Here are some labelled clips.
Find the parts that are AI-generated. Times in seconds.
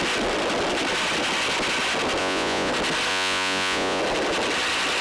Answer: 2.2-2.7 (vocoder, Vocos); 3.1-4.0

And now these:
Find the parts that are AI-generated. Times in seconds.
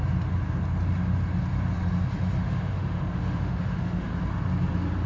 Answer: 2.4-4.1 (autoencoder, DAC-VAE)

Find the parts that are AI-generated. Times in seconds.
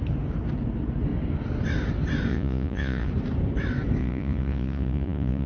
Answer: 2.3-3.1 (vocoder, Vocos); 4.0-5.5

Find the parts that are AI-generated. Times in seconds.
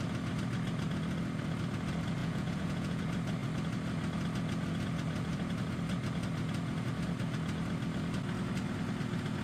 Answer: 2.2-3.0 (vocoder, Vocos)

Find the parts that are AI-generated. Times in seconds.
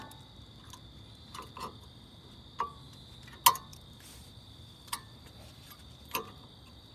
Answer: 1.7-2.2 (vocoder, BigVGAN v2); 3.7-6.9